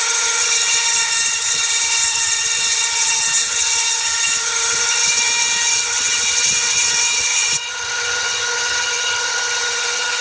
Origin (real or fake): fake